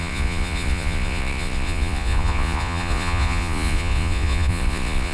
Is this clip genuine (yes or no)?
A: no